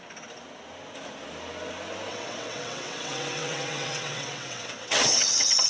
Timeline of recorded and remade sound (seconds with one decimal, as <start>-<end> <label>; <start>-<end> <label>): 0.0-2.1 recorded; 2.1-5.7 remade